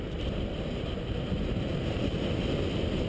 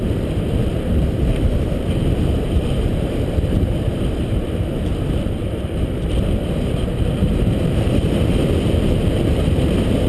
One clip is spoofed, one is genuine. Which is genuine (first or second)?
first